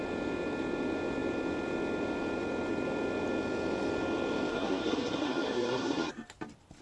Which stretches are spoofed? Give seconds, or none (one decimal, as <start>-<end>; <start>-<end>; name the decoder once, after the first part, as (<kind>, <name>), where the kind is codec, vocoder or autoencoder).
4.5-6.1 (codec, SNAC)